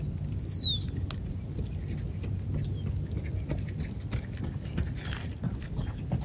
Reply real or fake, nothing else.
real